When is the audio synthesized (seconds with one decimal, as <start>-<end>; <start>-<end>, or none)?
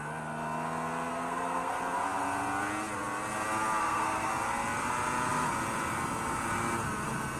1.1-1.8; 3.8-4.3